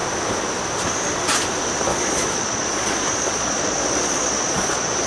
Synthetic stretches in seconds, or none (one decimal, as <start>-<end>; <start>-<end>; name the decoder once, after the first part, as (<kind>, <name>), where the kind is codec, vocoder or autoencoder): 1.9-5.1 (vocoder, Vocos)